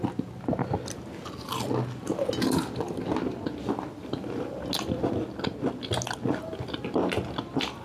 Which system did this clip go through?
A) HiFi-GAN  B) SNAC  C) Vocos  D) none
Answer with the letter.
D